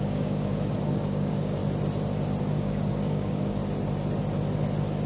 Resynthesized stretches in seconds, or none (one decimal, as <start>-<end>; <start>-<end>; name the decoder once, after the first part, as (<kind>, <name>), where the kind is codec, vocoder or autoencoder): 0.0-1.6 (codec, DAC); 2.4-3.6